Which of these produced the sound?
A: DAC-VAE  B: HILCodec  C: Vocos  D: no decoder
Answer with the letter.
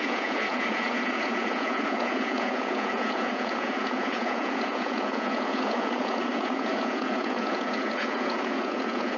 C